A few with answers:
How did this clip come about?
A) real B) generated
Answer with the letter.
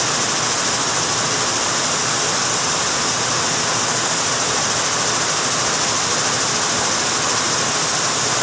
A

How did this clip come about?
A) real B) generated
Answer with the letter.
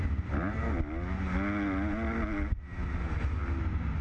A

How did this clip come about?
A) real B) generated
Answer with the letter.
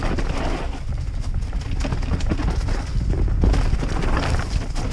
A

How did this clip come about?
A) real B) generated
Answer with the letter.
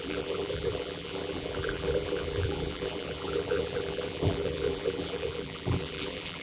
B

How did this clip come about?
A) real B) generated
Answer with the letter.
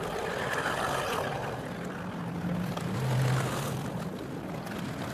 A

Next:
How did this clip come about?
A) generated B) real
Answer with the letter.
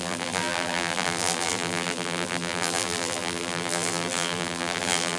A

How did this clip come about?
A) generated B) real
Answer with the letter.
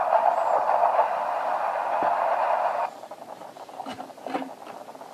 B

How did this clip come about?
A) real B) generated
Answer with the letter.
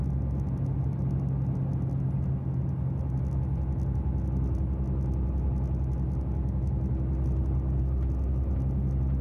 A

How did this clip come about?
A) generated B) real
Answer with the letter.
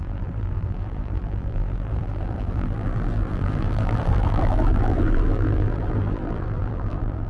A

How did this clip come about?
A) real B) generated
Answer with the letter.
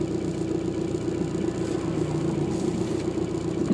A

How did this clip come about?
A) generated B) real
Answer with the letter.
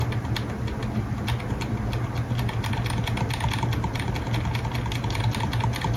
B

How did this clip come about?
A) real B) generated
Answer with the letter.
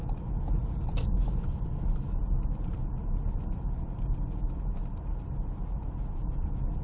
A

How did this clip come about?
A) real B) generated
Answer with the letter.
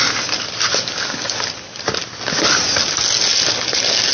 A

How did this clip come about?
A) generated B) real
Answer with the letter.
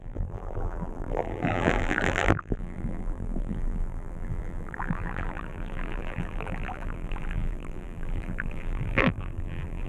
A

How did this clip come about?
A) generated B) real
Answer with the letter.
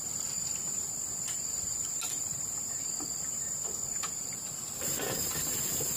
A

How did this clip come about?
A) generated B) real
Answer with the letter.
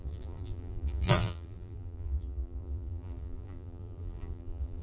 A